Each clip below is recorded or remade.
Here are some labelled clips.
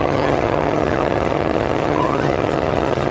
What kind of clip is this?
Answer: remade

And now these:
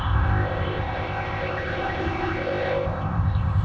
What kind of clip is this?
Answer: remade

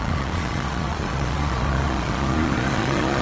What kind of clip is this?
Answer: remade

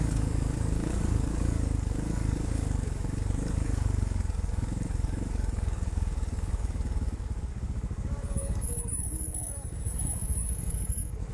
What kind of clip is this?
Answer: remade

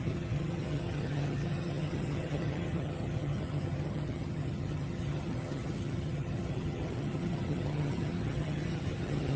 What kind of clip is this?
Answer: remade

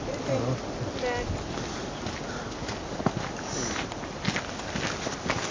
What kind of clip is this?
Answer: recorded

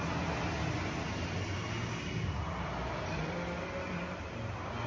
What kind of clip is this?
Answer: recorded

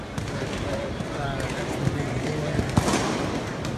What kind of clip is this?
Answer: recorded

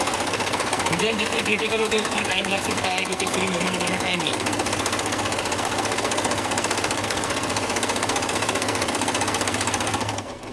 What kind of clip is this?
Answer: remade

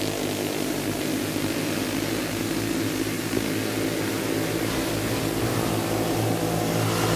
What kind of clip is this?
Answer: recorded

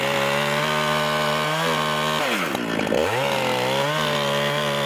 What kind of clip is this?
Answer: recorded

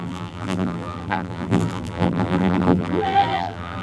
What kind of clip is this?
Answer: remade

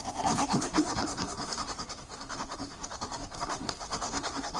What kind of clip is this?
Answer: remade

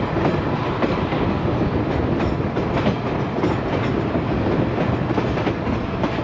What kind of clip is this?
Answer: recorded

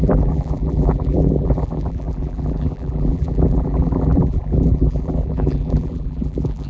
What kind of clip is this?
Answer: remade